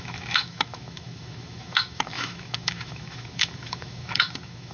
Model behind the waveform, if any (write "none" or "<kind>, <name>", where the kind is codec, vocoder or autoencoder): autoencoder, DAC-VAE